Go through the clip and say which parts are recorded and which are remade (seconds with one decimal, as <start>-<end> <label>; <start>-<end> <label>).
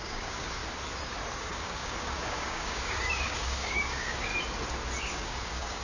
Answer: 0.0-0.6 remade; 0.6-1.3 recorded; 1.3-4.3 remade; 4.3-5.0 recorded; 5.0-5.8 remade